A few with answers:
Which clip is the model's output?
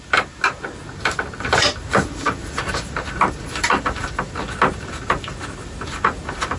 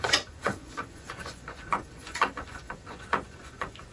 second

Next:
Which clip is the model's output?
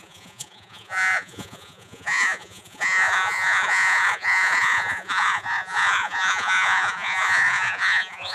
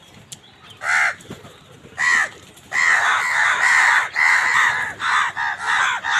first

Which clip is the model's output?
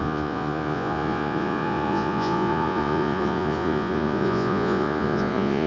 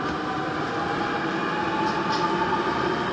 first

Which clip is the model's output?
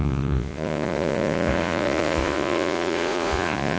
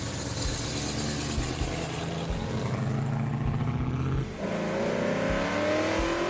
first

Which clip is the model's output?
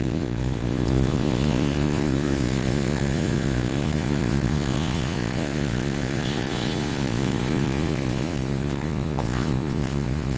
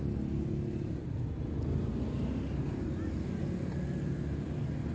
first